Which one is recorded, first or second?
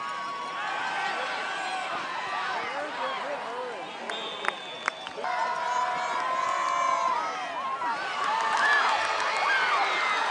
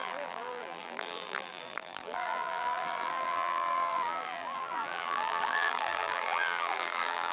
first